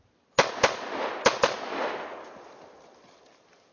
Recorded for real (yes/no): yes